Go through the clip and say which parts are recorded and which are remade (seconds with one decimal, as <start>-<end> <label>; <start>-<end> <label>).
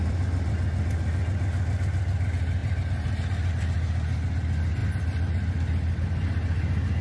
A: 0.0-0.5 remade; 0.5-2.6 recorded; 2.6-3.5 remade; 3.5-7.0 recorded